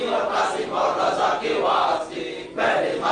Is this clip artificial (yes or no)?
no